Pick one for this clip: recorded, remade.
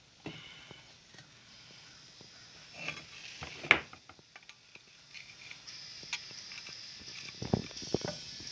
recorded